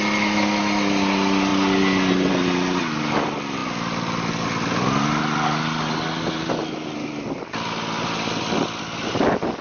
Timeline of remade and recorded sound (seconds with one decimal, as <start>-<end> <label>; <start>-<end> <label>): 0.0-9.6 recorded